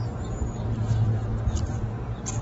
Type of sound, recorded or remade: recorded